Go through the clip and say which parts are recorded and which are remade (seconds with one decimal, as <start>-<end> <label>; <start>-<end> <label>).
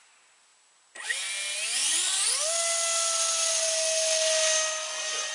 0.0-5.3 recorded